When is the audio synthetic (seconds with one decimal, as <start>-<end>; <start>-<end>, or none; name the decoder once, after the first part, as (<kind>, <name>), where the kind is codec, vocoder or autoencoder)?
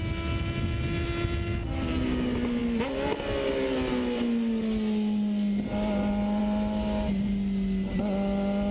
none